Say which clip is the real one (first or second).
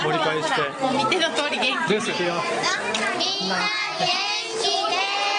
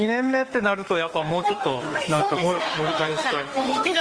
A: first